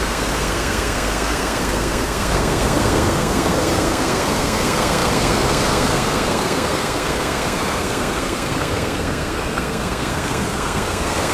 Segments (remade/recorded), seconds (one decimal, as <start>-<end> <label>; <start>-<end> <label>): 0.0-11.3 remade